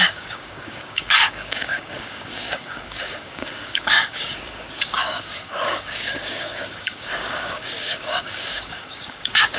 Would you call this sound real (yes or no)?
no